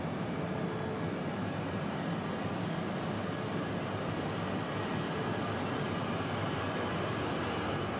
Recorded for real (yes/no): yes